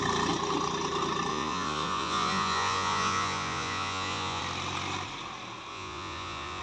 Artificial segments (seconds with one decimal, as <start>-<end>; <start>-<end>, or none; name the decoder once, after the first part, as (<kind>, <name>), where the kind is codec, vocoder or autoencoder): 1.3-4.4 (vocoder, Vocos); 5.7-6.6